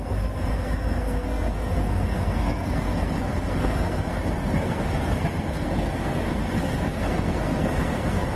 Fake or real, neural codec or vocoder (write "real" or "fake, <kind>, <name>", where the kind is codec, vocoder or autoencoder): fake, codec, SNAC